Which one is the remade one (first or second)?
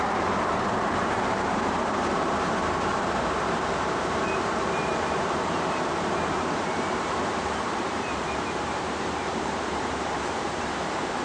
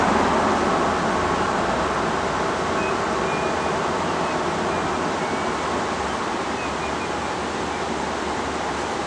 first